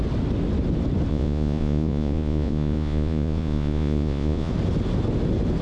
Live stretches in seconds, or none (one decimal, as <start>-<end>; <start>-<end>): 0.0-1.1; 4.5-5.6

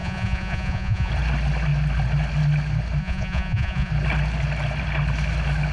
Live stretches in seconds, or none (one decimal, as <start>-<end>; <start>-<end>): 1.1-3.0; 3.9-5.7

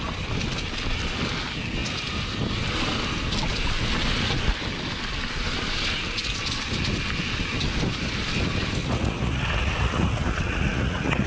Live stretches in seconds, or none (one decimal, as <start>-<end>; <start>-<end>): 0.0-8.8

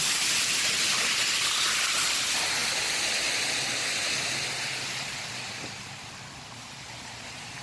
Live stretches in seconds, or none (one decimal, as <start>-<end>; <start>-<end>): 0.0-7.6

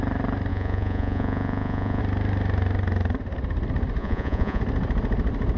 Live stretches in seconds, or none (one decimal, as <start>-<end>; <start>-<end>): 0.0-0.5; 2.0-4.0; 4.6-5.6

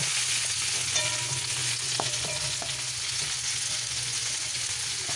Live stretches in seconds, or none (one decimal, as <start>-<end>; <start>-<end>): none